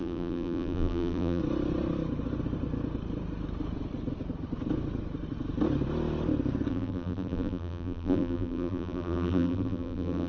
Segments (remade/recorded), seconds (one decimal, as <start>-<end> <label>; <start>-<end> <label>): 0.0-1.4 remade; 1.4-6.7 recorded; 6.7-10.3 remade